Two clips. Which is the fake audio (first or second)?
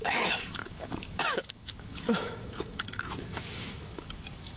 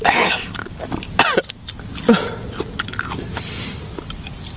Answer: first